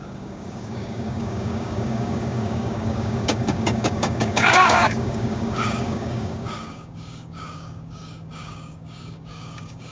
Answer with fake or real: fake